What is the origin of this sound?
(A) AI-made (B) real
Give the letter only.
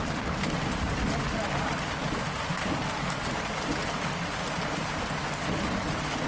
B